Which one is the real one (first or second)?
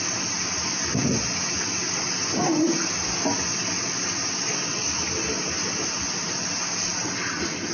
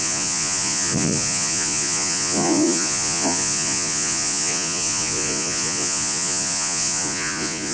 first